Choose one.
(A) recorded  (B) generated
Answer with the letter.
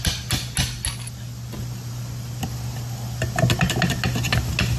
A